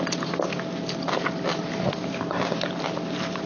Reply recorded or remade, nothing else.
recorded